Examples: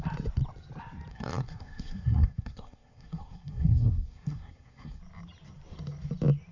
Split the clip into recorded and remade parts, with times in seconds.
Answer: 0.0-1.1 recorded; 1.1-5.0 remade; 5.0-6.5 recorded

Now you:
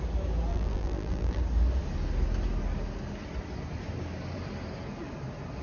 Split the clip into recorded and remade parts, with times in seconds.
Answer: 0.0-0.5 recorded; 0.5-1.4 remade; 1.4-5.6 recorded

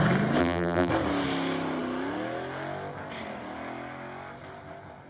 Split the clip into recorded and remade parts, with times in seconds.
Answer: 0.0-0.4 recorded; 0.4-0.9 remade; 0.9-5.1 recorded